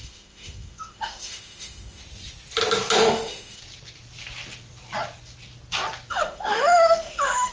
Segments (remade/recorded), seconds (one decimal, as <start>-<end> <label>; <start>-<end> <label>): 0.0-2.0 remade; 2.0-3.0 recorded; 3.0-3.6 remade; 3.6-6.1 recorded; 6.1-7.5 remade